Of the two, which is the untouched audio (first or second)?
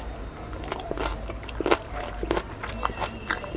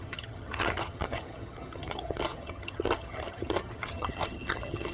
first